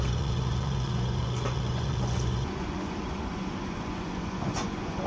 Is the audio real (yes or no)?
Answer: no